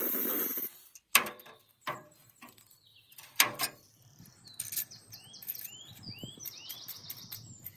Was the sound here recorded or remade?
remade